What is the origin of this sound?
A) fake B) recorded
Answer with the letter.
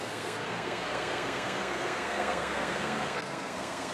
A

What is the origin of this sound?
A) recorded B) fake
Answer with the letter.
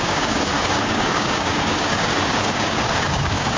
B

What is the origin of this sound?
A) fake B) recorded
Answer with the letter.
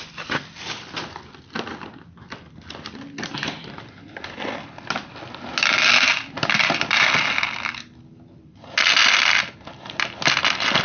B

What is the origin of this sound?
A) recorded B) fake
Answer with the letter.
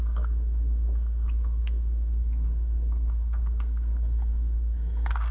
B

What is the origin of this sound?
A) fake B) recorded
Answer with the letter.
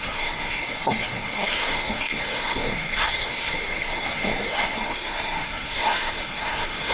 A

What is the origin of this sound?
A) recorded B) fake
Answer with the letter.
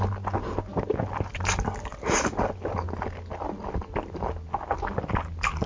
A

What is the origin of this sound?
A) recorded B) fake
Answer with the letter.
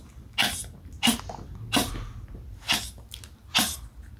A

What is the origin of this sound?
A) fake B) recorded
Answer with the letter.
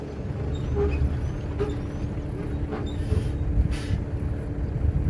B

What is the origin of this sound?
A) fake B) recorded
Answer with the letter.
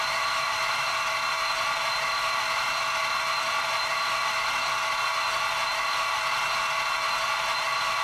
B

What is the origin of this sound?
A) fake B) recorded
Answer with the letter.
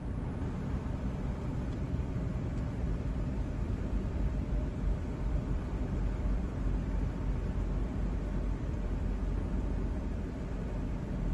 A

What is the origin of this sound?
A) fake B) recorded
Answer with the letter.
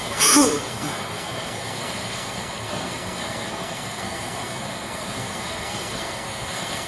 A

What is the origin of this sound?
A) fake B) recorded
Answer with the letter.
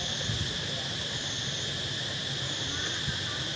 B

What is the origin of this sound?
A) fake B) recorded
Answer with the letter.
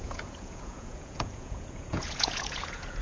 A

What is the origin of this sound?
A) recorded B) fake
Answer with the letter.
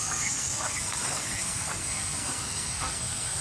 B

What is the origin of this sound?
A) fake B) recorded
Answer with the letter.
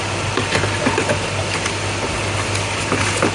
B